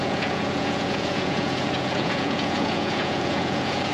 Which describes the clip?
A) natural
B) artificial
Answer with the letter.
B